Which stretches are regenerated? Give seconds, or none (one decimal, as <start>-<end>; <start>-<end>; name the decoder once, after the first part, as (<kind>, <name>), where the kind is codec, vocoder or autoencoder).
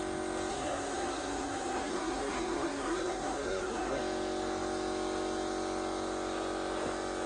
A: 0.5-4.0 (codec, SNAC)